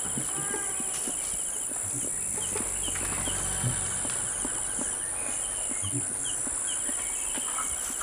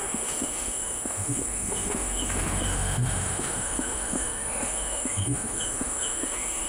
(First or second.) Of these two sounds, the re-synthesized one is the second